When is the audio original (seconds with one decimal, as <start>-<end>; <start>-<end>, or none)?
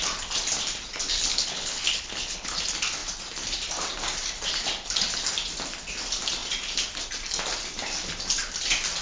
0.0-1.3; 2.6-9.0